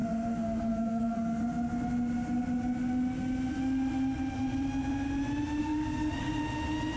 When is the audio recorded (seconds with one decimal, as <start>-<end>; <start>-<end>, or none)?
1.4-5.6; 6.4-7.0